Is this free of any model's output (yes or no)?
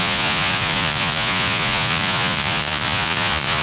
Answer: no